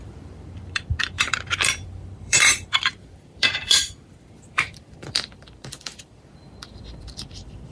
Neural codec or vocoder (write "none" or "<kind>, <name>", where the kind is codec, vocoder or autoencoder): vocoder, BigVGAN v2